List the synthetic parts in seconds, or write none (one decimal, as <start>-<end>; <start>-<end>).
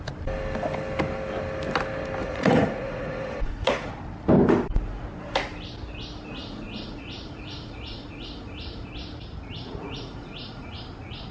2.2-3.9; 6.4-8.9; 9.8-10.8